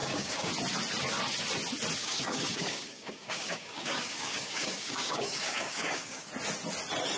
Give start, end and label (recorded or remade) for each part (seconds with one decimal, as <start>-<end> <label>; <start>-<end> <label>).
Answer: 0.0-0.5 remade; 0.5-2.0 recorded; 2.0-6.3 remade; 6.3-7.2 recorded